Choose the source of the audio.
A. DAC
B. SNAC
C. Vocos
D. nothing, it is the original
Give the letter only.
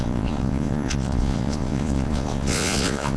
C